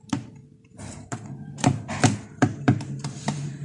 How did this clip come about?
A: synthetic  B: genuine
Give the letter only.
A